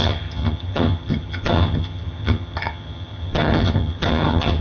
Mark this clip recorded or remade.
remade